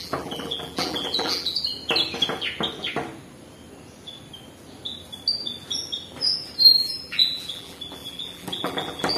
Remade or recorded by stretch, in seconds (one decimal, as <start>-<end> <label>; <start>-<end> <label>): 0.0-1.7 remade; 1.7-6.7 recorded; 6.7-9.2 remade